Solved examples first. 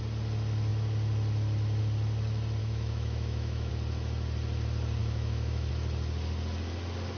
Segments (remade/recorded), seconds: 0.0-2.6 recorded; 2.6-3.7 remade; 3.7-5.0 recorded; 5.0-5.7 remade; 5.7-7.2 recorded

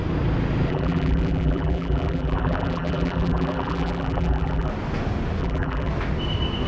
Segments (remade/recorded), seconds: 0.0-0.7 recorded; 0.7-4.7 remade; 4.7-5.4 recorded; 5.4-5.9 remade; 5.9-6.7 recorded

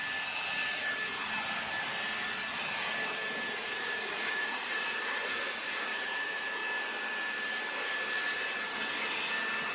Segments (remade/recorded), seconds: 0.0-3.5 recorded; 3.5-6.6 remade; 6.6-9.7 recorded

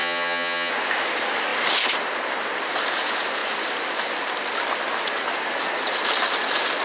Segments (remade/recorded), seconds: 0.0-0.7 remade; 0.7-6.8 recorded